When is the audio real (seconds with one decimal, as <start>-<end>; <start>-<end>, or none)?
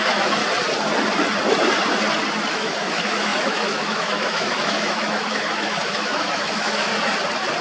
0.4-2.5; 6.9-7.6